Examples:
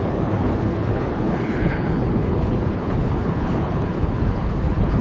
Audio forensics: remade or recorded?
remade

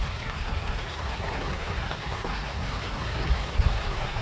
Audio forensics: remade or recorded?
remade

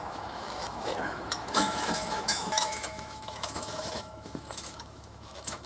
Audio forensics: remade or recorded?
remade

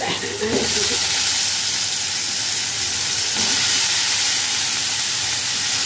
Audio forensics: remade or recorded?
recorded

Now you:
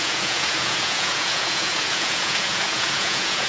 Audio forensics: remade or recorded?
remade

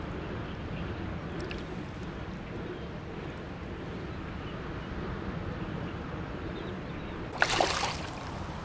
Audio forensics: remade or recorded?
recorded